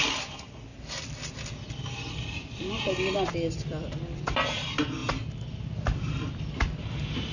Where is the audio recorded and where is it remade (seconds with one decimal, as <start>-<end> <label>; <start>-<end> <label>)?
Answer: 0.0-0.7 remade; 0.7-1.3 recorded; 1.3-7.3 remade